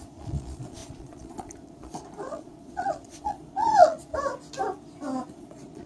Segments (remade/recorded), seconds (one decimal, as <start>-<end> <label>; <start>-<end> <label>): 0.0-4.1 remade; 4.1-5.3 recorded; 5.3-5.9 remade